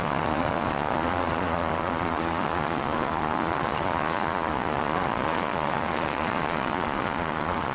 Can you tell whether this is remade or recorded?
remade